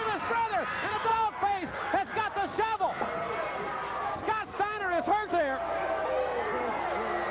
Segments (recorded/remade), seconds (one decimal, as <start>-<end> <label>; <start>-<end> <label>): 0.0-7.3 recorded